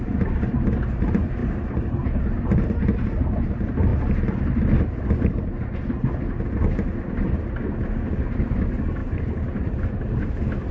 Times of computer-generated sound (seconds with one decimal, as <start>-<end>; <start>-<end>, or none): none